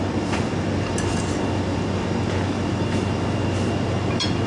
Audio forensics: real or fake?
real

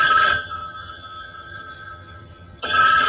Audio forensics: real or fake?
fake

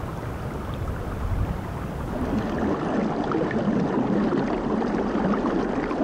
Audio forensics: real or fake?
real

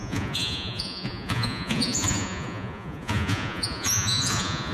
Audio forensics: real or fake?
fake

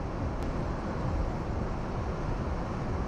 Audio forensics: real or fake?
real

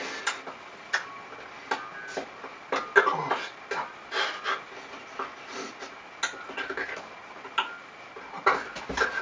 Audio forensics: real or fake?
real